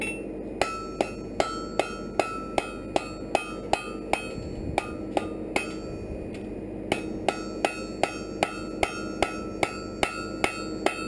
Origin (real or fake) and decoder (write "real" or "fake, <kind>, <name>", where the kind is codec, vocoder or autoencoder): real